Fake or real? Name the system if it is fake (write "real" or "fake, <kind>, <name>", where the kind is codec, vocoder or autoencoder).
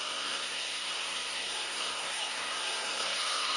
fake, codec, SNAC